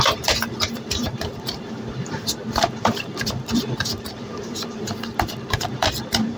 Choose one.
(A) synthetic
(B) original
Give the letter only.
A